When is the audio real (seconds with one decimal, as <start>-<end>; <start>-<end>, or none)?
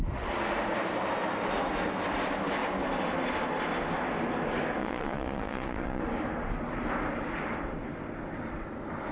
0.0-4.8; 6.0-9.1